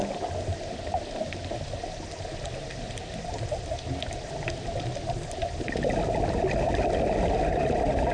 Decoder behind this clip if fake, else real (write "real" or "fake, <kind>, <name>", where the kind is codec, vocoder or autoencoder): real